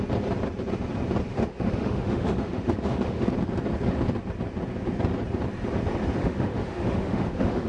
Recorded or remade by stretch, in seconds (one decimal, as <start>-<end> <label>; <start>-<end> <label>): 0.0-1.3 recorded; 1.3-3.3 remade; 3.3-6.2 recorded; 6.2-7.7 remade